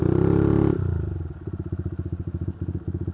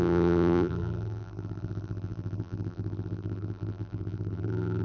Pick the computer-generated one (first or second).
second